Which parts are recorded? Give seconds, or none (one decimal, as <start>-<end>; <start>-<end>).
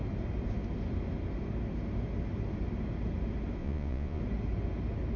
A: 0.0-3.6; 4.2-5.2